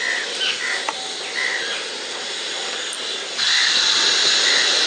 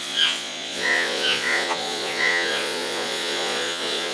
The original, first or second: first